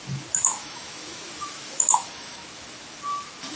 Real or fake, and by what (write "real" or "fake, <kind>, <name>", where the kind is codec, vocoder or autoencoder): fake, autoencoder, DAC-VAE